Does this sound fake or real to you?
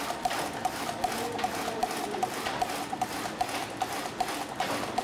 real